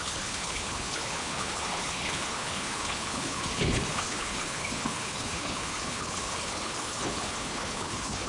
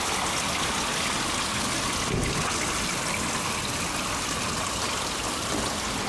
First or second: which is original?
second